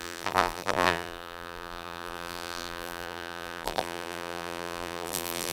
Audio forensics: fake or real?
fake